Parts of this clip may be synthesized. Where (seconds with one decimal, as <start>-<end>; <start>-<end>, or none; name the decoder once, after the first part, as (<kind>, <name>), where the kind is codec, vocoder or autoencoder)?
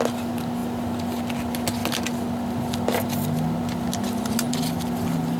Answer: none